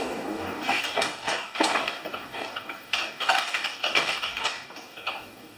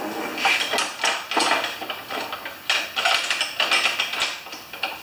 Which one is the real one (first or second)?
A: second